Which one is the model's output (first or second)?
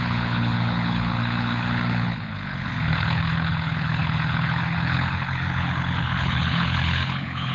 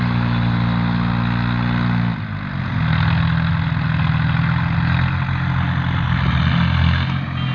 first